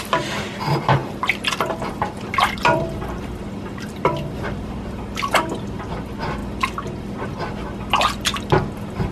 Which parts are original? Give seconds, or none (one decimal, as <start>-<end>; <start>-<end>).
0.0-1.0; 5.0-9.1